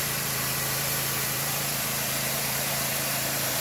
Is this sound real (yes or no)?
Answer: no